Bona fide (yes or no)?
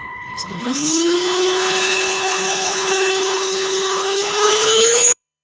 no